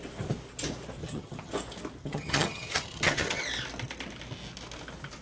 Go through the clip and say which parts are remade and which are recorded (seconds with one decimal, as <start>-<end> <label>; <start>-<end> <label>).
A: 0.0-1.0 recorded; 1.0-1.5 remade; 1.5-2.0 recorded; 2.0-3.4 remade; 3.4-5.2 recorded